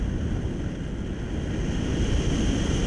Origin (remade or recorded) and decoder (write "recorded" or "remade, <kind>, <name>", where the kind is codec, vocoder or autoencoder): recorded